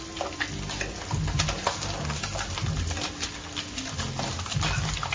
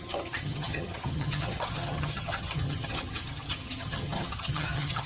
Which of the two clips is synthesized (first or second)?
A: second